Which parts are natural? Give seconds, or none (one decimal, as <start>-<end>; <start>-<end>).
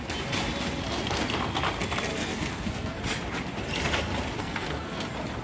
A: 0.0-2.1; 3.0-4.4; 5.0-5.4